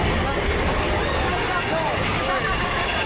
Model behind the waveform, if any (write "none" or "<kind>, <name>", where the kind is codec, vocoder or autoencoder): none